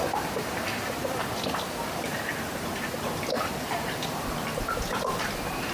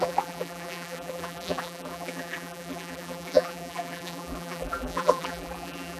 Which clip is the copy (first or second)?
second